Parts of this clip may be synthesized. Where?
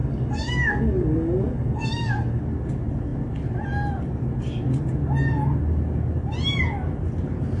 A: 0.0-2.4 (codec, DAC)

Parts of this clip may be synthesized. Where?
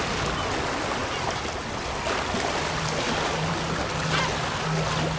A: none